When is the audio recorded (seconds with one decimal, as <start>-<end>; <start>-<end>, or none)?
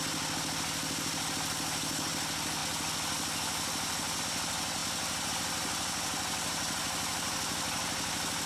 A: 0.0-8.5